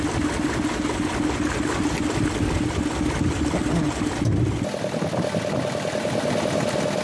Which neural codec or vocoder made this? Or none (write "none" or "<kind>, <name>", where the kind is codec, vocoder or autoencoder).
none